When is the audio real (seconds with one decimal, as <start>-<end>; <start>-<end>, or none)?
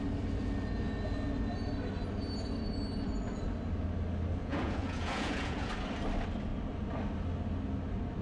0.0-4.4; 5.7-8.2